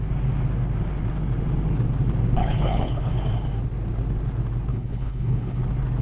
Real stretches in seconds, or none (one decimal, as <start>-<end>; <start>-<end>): 0.0-2.4; 3.1-4.7; 5.6-6.0